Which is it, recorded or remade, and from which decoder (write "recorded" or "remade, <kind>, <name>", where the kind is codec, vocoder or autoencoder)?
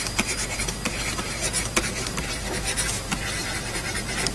remade, vocoder, BigVGAN v2